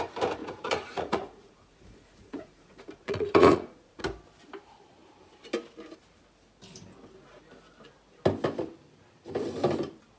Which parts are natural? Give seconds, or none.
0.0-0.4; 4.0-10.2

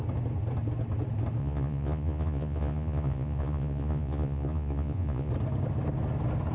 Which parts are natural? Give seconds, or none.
0.0-1.4; 5.3-6.5